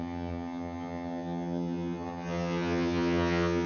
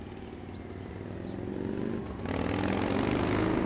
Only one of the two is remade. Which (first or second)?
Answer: first